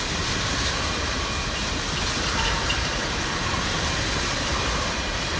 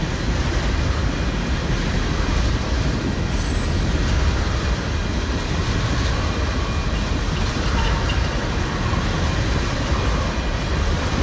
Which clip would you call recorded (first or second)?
second